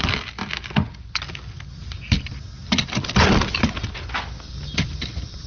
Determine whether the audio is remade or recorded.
recorded